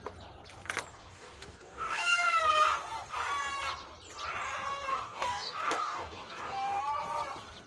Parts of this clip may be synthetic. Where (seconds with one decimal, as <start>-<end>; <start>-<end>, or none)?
0.9-2.4; 4.9-6.8